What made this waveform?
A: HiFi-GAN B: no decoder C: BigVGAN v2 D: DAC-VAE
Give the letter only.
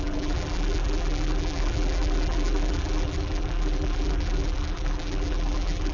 C